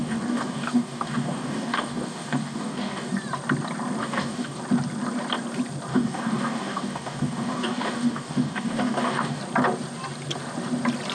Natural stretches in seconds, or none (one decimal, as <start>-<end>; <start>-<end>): 3.1-4.0; 4.6-5.9; 9.4-11.1